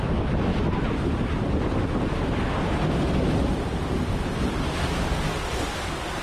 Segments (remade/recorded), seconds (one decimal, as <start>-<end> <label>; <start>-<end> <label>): 0.0-6.2 recorded